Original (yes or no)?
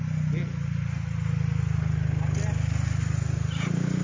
yes